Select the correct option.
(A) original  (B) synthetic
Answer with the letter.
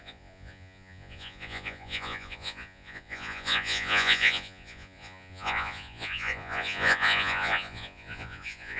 B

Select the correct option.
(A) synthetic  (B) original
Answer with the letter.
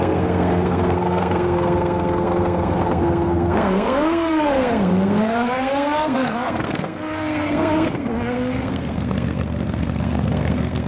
A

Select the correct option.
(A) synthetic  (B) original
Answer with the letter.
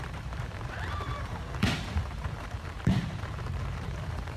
A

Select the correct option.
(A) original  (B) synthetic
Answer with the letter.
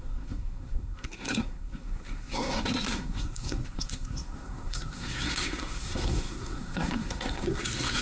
B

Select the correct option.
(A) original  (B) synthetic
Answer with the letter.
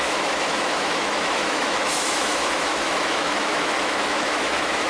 B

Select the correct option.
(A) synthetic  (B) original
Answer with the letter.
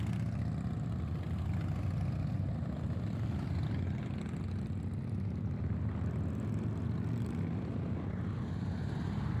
B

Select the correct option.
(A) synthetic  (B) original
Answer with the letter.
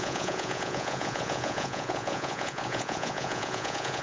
A